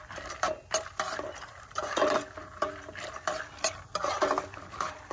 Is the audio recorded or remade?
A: remade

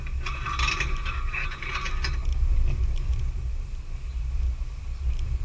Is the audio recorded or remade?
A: recorded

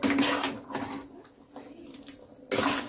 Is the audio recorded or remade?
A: recorded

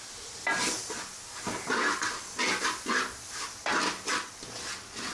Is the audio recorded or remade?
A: recorded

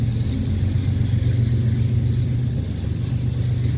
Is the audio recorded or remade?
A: recorded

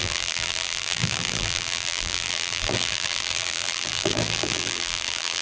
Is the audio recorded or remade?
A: remade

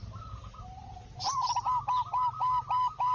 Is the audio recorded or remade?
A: recorded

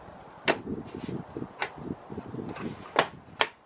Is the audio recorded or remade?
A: recorded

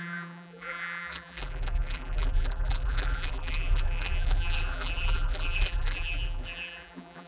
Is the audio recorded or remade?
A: remade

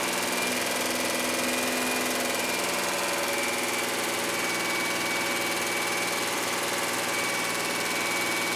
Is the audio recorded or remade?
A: recorded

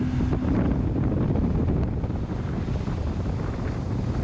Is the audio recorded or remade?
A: recorded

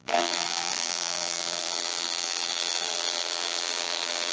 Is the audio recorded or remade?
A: remade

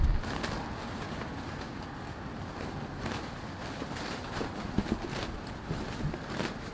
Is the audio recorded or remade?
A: recorded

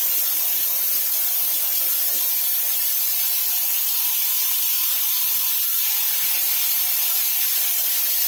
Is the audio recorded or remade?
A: remade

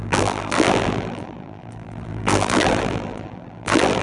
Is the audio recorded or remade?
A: remade